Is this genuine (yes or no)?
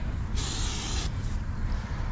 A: no